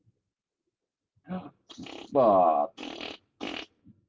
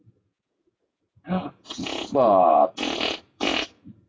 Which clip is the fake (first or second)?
second